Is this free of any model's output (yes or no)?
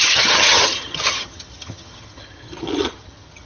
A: no